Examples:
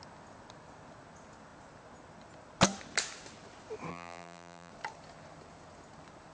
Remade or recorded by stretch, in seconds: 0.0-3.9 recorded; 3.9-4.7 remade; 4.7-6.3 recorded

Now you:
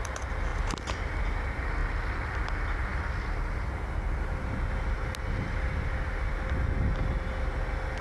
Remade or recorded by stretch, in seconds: 0.0-8.0 recorded

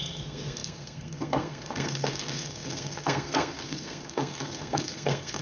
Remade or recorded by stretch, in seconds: 0.0-5.4 remade

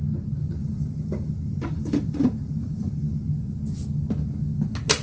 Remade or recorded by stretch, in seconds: 0.0-0.6 recorded; 0.6-3.2 remade; 3.2-5.0 recorded

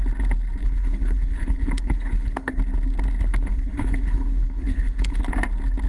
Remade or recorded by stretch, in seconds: 0.0-0.6 recorded; 0.6-2.6 remade; 2.6-3.3 recorded; 3.3-5.2 remade; 5.2-5.9 recorded

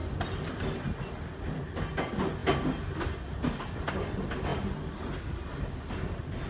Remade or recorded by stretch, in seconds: 0.0-6.5 recorded

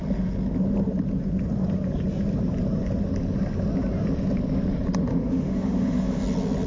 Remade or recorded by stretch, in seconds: 0.0-5.1 recorded; 5.1-6.2 remade; 6.2-6.7 recorded